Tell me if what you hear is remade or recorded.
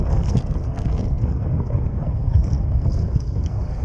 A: remade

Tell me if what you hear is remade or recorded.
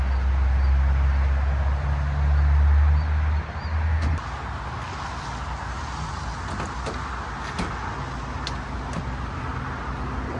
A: recorded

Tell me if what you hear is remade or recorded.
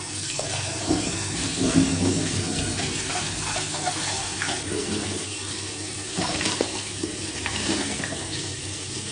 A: remade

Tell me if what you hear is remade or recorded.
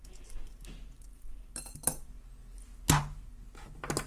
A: recorded